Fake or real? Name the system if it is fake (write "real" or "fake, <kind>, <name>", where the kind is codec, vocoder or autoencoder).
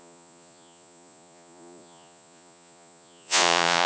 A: fake, vocoder, Vocos